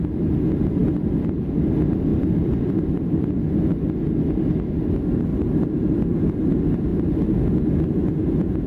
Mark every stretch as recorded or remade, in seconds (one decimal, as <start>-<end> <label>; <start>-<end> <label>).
0.0-0.8 recorded; 0.8-1.7 remade; 1.7-2.1 recorded; 2.1-3.1 remade; 3.1-5.3 recorded; 5.3-6.5 remade; 6.5-8.7 recorded